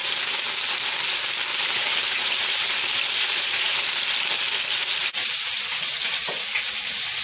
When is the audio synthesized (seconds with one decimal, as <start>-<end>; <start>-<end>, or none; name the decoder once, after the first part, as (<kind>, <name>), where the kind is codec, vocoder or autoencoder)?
1.5-3.9 (vocoder, BigVGAN v2); 5.0-5.6

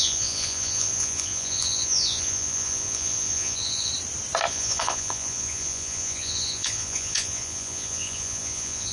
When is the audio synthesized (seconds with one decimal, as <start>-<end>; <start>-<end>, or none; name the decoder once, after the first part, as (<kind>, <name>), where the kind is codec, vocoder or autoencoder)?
0.0-3.9 (vocoder, Vocos); 4.5-8.9

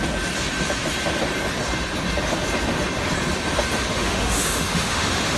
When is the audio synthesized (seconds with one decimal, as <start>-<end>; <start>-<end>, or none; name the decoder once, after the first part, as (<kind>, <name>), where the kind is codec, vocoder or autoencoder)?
3.9-5.4 (autoencoder, DAC-VAE)

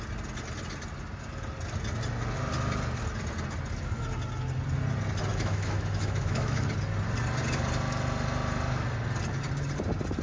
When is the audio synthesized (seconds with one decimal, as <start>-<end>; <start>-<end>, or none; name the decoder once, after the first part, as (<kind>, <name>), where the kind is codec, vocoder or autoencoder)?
5.3-6.7 (autoencoder, DAC-VAE)